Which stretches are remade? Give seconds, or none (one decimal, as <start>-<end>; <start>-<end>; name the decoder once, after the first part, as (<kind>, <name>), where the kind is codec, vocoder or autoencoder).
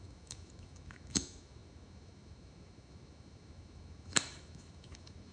0.0-5.3 (autoencoder, DAC-VAE)